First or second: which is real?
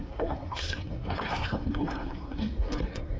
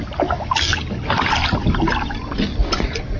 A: second